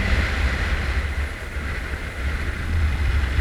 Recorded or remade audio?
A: recorded